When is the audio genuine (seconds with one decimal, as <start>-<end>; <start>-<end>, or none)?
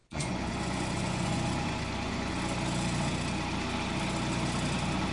2.3-5.1